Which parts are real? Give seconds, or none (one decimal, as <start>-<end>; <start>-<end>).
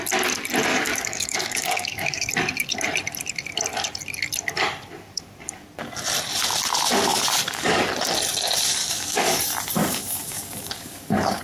0.0-0.7; 2.3-7.1; 7.8-8.8; 9.4-9.8